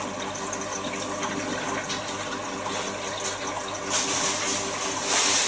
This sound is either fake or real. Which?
real